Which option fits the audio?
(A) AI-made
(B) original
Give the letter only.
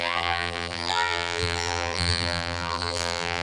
A